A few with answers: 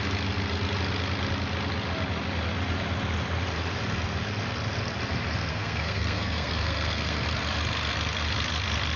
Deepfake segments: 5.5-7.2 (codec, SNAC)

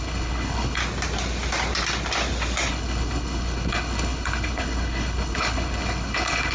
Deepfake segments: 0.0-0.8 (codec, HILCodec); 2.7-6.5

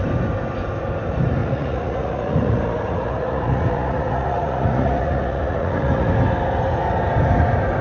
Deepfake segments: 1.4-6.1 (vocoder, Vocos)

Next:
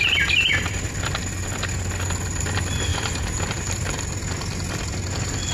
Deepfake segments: 2.9-3.9 (vocoder, BigVGAN v2)